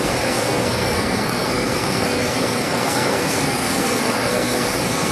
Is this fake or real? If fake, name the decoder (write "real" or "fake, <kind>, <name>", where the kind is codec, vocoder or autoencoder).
fake, codec, SNAC